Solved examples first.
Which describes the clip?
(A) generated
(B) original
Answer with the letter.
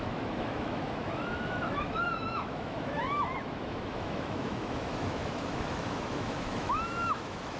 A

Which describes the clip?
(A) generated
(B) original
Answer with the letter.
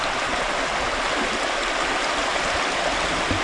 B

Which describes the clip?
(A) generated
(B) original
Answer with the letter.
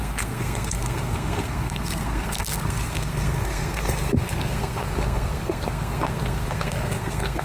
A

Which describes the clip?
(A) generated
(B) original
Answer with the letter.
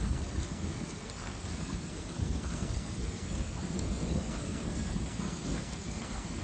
A